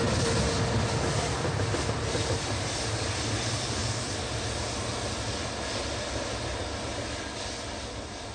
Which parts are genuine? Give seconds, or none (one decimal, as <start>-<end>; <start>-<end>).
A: 0.0-8.3